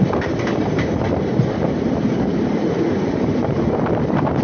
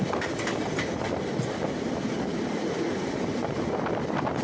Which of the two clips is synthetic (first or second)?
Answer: first